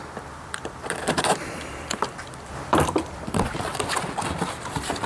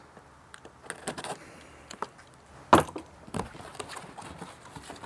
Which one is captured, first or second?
second